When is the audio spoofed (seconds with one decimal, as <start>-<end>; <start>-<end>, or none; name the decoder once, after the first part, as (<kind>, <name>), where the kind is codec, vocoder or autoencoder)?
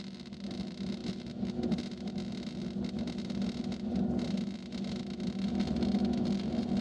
none